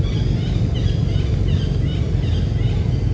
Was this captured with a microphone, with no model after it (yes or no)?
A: yes